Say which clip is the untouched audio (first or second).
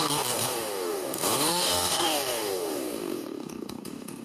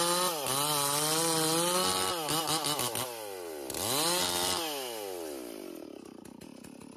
second